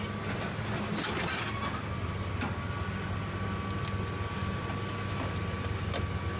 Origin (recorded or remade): recorded